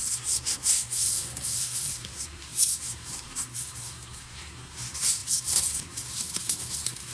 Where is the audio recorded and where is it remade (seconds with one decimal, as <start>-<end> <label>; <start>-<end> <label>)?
0.0-7.1 remade